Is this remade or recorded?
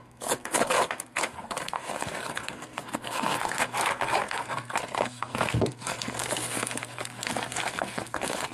remade